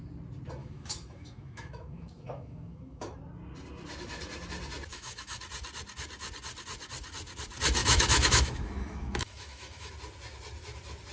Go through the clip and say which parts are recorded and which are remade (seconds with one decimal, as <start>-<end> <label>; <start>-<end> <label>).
0.0-0.6 recorded; 0.6-3.2 remade; 3.2-4.9 recorded; 4.9-5.4 remade; 5.4-7.8 recorded; 7.8-9.9 remade; 9.9-11.1 recorded

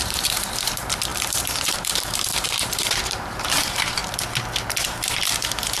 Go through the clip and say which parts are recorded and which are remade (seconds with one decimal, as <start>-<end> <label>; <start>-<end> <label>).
0.0-4.0 remade; 4.0-4.7 recorded; 4.7-5.8 remade

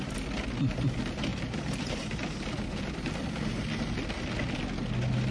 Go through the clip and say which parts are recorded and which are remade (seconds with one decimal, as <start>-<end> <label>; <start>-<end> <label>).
0.0-5.3 recorded

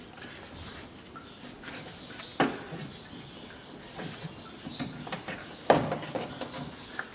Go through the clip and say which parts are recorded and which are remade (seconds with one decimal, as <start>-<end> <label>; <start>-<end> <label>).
0.0-5.4 recorded; 5.4-6.3 remade; 6.3-7.1 recorded

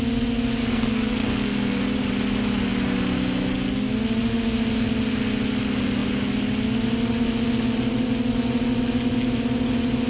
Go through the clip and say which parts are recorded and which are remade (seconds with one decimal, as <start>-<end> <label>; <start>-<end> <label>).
0.0-0.6 recorded; 0.6-1.8 remade; 1.8-10.1 recorded